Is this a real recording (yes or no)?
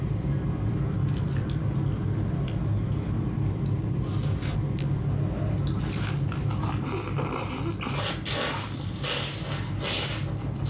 yes